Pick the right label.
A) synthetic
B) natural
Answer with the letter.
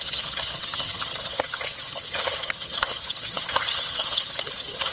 A